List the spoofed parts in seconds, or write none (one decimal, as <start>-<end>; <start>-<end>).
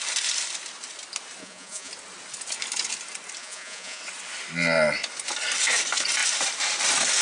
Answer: 1.4-1.9; 3.4-4.0